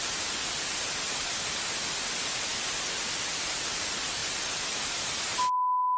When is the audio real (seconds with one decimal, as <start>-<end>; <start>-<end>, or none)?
0.0-6.0